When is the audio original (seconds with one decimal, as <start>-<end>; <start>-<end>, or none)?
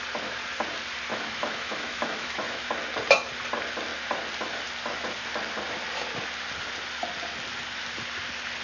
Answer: 0.0-1.1; 2.7-8.6